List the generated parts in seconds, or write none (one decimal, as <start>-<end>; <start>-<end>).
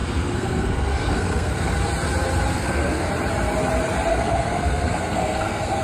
0.0-1.7; 2.5-3.1; 4.1-5.8